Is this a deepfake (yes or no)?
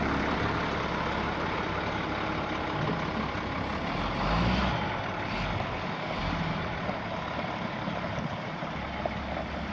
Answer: no